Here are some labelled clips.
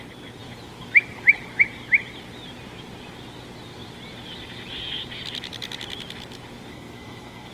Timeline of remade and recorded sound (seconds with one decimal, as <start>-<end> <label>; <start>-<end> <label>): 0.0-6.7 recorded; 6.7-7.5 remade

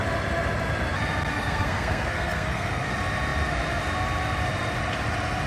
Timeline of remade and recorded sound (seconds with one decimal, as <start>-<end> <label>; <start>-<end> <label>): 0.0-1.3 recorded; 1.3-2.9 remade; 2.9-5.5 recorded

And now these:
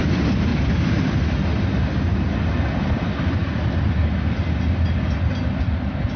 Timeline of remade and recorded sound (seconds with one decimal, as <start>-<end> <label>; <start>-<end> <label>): 0.0-6.2 recorded

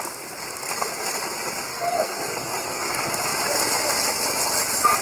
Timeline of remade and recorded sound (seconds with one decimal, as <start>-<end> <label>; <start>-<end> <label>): 0.0-1.7 recorded; 1.7-2.9 remade; 2.9-5.0 recorded